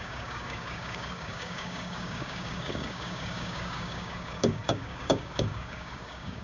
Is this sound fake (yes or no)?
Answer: yes